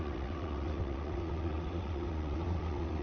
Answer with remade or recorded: remade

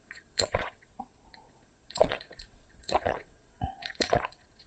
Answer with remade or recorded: remade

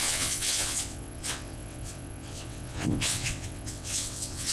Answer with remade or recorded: remade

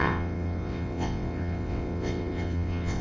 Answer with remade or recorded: remade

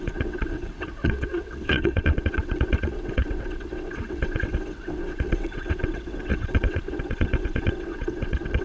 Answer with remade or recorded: remade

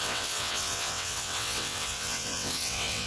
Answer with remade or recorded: remade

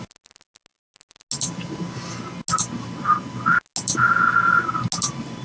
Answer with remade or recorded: recorded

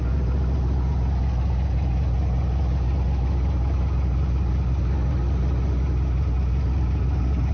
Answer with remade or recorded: recorded